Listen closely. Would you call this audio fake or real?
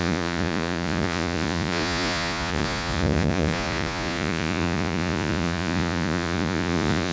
fake